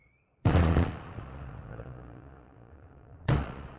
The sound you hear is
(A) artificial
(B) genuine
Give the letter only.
A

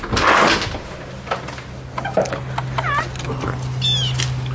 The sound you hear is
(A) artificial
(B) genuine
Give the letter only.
B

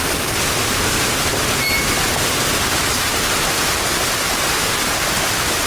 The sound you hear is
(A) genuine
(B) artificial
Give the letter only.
A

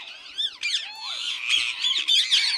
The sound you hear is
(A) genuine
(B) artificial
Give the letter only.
A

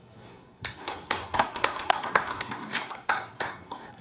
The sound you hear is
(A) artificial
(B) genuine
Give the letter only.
A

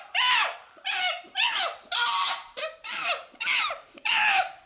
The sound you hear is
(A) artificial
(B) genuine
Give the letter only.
A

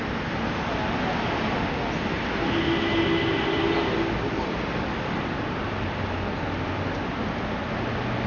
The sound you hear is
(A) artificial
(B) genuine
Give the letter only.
B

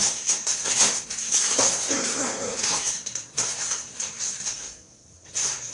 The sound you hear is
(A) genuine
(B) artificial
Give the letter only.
B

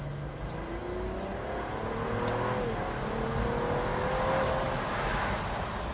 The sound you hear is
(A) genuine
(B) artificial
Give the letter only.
A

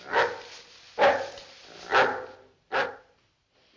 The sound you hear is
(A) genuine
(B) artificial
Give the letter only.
A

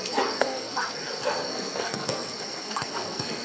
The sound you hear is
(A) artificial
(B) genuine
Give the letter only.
A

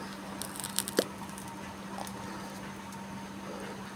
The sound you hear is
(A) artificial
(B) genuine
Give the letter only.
B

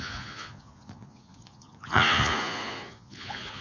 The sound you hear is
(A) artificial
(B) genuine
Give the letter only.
A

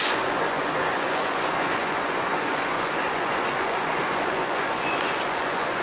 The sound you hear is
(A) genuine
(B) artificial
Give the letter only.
B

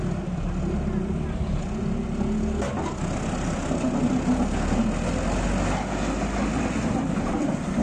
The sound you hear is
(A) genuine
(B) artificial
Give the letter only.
A